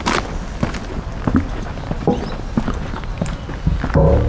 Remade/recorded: recorded